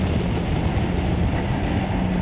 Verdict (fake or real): real